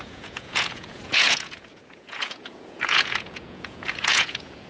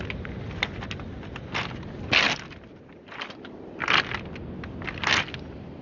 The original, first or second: second